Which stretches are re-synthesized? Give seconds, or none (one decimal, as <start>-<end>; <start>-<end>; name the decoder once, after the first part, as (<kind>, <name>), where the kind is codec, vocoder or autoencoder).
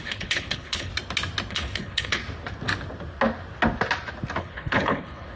0.0-0.9 (codec, HILCodec); 1.5-2.2; 4.4-5.4